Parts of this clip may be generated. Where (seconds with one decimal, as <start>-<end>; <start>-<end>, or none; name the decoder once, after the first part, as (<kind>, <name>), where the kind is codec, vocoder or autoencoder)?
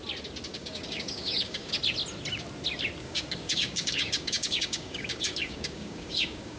0.5-1.7 (codec, DAC); 3.0-6.6